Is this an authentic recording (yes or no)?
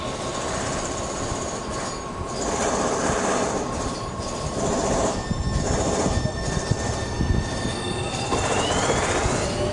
yes